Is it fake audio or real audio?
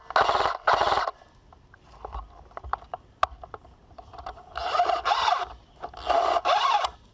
real